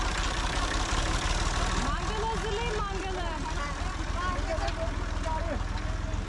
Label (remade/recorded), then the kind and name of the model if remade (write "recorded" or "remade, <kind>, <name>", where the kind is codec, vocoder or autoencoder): recorded